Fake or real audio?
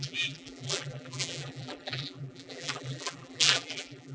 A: fake